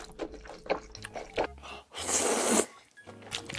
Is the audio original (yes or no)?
yes